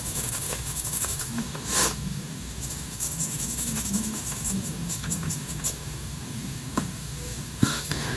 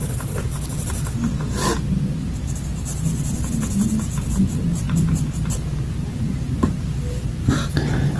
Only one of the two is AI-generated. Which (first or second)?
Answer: first